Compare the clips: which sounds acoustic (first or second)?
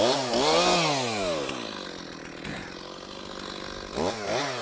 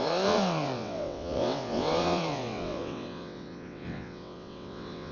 first